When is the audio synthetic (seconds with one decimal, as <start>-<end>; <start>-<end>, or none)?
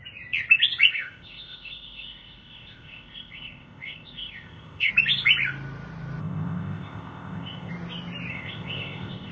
0.9-4.9; 6.2-7.7; 8.3-9.3